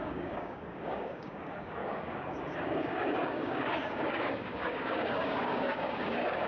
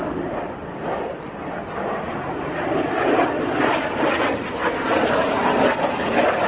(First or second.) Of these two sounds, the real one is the second